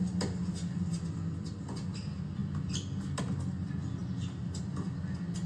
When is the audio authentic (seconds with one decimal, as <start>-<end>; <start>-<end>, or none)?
0.0-5.5